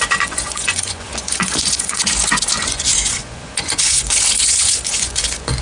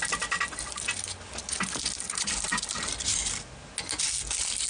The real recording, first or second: second